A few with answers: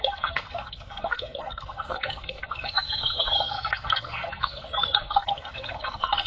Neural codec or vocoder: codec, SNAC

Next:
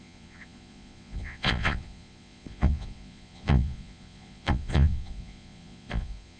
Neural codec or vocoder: vocoder, Vocos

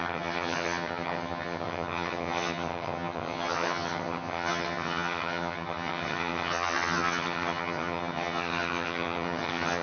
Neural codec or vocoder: vocoder, HiFi-GAN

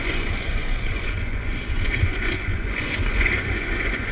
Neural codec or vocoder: vocoder, Vocos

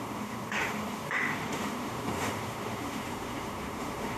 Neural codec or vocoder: autoencoder, DAC-VAE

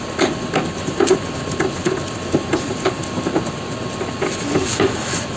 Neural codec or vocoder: vocoder, BigVGAN v2